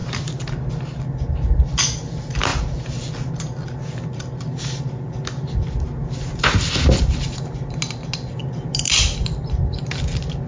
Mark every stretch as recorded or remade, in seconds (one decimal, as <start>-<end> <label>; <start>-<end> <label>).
0.0-10.5 recorded